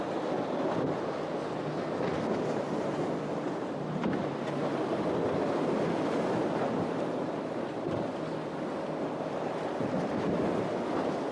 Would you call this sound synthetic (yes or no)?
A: no